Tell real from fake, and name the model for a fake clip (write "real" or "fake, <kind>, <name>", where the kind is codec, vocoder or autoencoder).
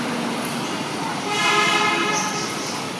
real